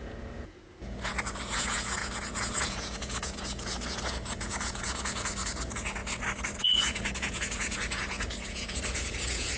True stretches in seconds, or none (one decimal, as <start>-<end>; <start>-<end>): 6.0-6.6